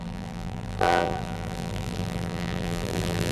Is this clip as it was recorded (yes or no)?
no